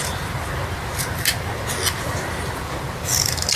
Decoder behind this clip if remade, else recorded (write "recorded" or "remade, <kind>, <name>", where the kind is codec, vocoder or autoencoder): recorded